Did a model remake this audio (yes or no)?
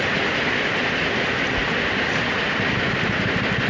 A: no